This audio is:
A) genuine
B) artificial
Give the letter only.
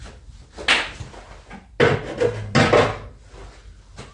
A